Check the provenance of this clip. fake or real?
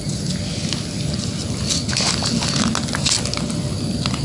real